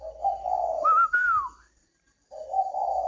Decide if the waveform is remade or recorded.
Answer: recorded